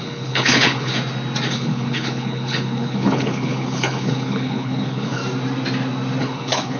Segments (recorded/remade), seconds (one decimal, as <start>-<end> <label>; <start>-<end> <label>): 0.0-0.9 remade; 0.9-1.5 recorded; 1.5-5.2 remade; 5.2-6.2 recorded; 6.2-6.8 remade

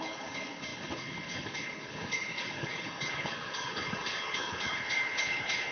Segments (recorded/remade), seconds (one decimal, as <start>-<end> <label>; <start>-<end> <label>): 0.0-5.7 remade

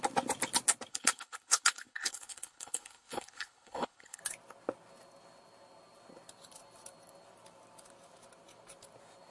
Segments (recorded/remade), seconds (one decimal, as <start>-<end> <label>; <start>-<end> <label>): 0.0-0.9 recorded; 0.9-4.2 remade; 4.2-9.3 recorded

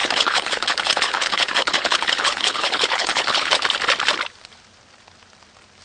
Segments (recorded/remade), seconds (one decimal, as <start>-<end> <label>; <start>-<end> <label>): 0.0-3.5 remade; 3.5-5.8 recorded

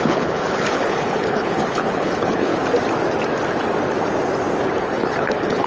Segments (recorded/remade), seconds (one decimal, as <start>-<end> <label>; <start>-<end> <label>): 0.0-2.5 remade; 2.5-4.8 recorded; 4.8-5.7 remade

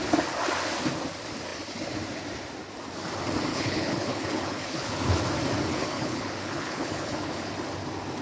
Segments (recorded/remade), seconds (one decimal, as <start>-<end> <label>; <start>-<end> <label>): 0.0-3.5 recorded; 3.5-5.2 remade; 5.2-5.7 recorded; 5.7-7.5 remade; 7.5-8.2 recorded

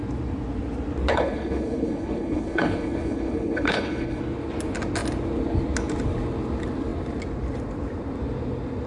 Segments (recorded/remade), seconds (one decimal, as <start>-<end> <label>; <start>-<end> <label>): 0.0-1.1 recorded; 1.1-4.2 remade; 4.2-8.9 recorded

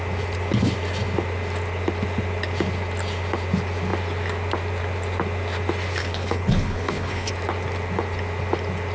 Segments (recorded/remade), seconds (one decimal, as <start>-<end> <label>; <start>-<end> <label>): 0.0-6.0 recorded; 6.0-7.3 remade; 7.3-8.9 recorded